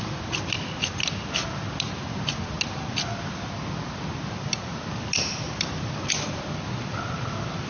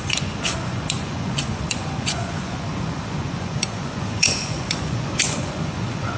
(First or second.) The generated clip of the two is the second